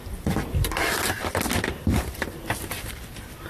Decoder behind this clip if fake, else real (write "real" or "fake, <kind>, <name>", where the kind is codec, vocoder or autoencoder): fake, vocoder, BigVGAN v2